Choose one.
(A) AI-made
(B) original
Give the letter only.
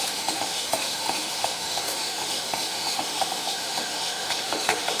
A